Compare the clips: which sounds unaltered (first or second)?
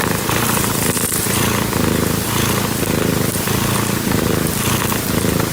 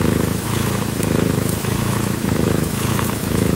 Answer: first